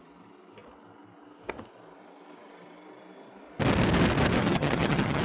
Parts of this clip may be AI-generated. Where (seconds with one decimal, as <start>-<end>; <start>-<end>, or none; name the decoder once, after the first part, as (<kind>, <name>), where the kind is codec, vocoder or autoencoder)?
4.4-5.2 (vocoder, HiFi-GAN)